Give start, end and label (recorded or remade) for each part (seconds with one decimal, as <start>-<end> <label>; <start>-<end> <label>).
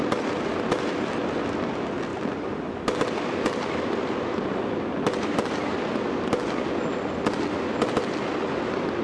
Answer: 0.0-9.0 recorded